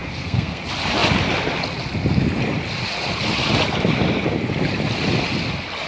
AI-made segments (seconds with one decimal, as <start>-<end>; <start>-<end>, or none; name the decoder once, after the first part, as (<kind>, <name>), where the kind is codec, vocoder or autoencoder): 0.0-0.6 (codec, SNAC)